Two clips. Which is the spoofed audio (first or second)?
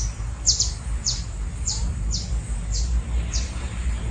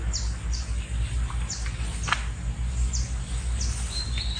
first